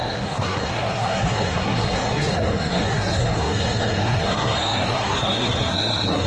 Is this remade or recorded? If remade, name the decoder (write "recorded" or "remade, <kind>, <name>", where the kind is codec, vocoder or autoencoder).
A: remade, codec, SNAC